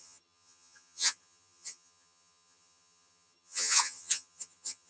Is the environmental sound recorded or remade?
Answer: remade